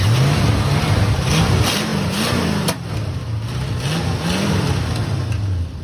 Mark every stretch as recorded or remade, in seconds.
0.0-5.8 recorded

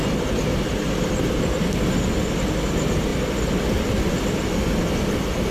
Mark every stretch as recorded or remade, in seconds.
0.0-5.5 recorded

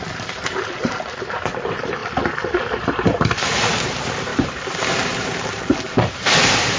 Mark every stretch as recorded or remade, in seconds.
0.0-2.0 remade; 2.0-2.6 recorded; 2.6-6.8 remade

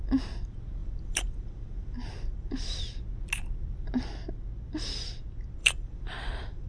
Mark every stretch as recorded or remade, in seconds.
0.0-0.8 recorded; 0.8-2.8 remade; 2.8-5.6 recorded; 5.6-6.7 remade

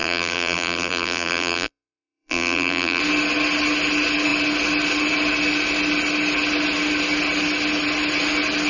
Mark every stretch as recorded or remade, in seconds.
0.0-3.0 remade; 3.0-8.7 recorded

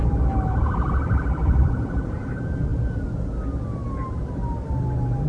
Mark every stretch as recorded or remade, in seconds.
0.0-2.7 remade; 2.7-5.3 recorded

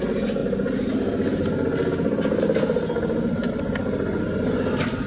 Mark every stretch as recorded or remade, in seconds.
0.0-5.1 recorded

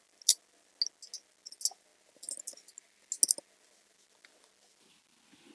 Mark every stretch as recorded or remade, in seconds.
0.0-5.5 recorded